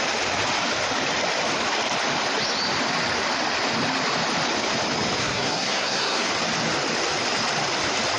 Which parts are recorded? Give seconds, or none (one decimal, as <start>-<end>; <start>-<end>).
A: 0.0-5.2; 6.3-8.2